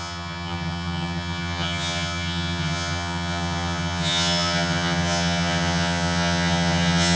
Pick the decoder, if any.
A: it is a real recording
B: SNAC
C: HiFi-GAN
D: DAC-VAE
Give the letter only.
C